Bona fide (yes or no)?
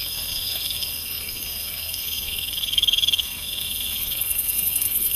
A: no